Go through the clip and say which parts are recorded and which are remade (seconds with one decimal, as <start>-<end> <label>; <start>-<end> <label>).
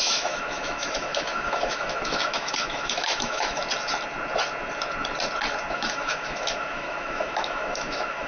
0.0-3.6 remade; 3.6-5.7 recorded; 5.7-8.3 remade